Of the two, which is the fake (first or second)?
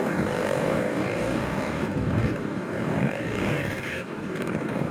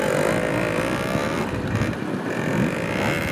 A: first